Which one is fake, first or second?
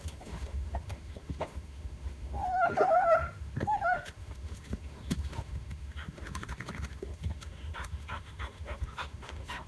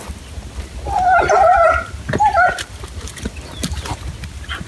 first